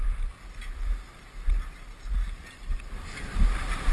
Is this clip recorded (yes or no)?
yes